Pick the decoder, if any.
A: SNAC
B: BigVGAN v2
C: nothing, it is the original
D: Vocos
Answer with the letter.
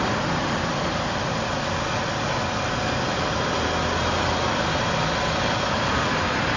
C